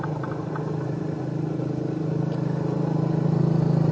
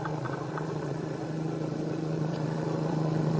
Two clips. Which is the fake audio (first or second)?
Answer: second